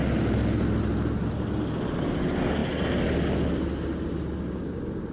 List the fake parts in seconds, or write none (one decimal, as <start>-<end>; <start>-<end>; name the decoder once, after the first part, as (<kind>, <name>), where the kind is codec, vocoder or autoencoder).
none